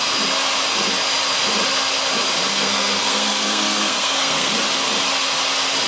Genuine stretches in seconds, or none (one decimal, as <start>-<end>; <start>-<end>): 0.0-2.5; 4.5-5.9